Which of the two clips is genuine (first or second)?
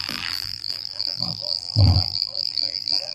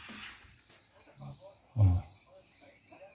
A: second